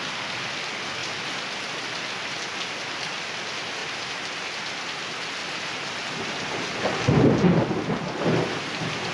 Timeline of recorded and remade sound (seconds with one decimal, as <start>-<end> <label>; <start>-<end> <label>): 0.0-5.4 recorded; 5.4-7.1 remade; 7.1-9.1 recorded